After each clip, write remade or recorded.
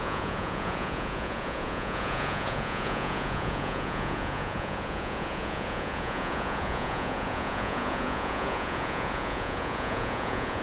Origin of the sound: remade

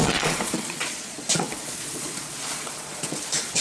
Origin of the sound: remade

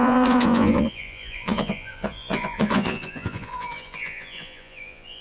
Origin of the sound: remade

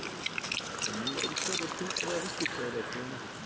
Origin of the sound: recorded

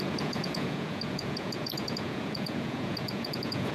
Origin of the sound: remade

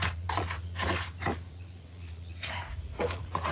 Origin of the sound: remade